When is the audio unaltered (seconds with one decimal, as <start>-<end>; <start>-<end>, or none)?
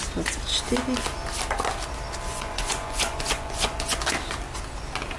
0.0-2.3; 4.0-5.2